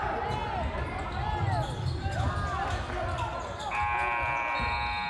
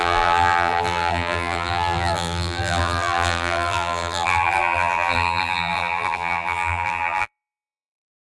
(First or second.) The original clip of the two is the first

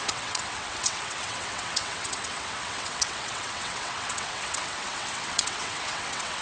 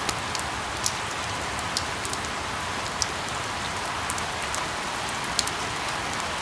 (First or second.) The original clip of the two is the second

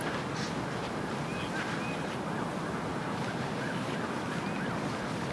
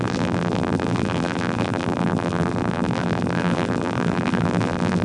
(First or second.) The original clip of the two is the first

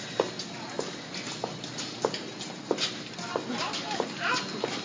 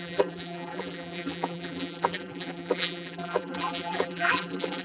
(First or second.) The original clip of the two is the first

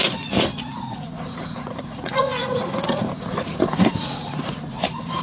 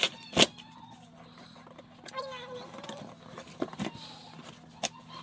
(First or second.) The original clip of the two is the second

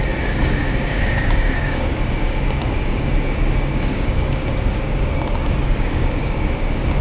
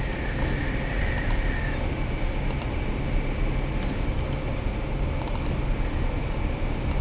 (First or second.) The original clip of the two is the second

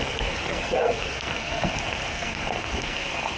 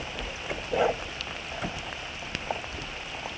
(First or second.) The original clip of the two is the second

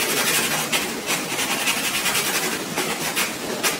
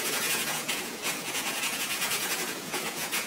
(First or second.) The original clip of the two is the first